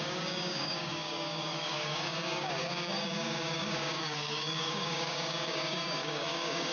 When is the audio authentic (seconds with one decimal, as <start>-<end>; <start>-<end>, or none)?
none